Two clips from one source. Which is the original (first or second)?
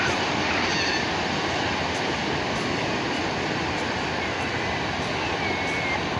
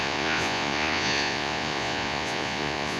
first